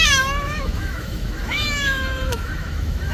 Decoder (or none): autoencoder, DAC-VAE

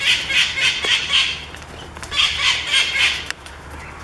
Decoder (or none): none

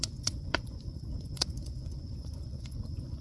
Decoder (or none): vocoder, Vocos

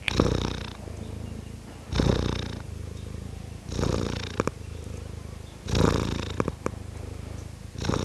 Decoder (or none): none